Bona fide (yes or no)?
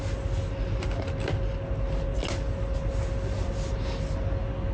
yes